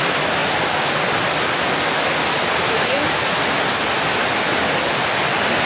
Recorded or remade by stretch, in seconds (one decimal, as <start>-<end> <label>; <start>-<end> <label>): 0.0-5.7 recorded